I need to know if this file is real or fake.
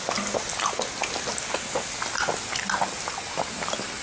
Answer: real